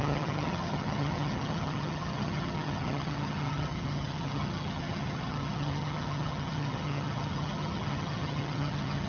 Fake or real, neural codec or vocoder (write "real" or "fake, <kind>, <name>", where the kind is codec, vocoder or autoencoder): fake, vocoder, HiFi-GAN